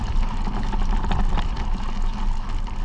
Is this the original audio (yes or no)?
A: yes